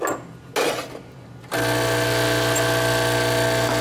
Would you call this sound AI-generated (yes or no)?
no